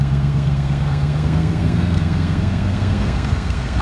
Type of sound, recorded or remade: remade